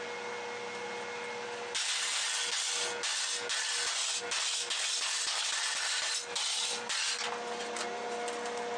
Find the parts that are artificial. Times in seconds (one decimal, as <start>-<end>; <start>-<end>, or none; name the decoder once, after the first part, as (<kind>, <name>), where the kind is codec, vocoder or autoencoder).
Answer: none